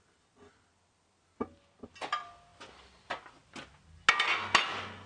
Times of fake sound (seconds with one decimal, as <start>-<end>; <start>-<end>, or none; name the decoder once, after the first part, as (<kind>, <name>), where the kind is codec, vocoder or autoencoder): none